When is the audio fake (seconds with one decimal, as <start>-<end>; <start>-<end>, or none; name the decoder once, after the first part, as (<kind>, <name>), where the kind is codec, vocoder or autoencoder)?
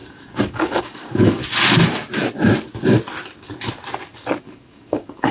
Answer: 0.0-1.4 (codec, DAC); 4.4-5.3